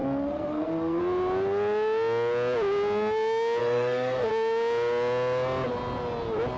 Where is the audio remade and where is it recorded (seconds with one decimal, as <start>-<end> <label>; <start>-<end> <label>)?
0.0-1.0 remade; 1.0-3.6 recorded; 3.6-4.3 remade; 4.3-6.6 recorded